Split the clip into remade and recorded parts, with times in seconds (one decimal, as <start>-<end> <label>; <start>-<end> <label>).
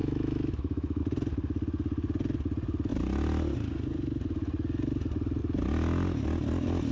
0.0-1.0 remade; 1.0-6.9 recorded